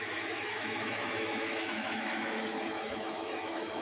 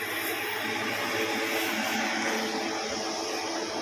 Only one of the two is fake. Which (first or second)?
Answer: first